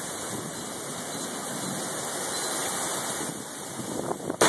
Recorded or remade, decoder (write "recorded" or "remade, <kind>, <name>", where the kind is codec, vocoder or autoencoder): recorded